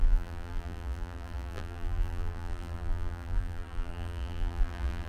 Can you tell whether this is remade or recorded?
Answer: remade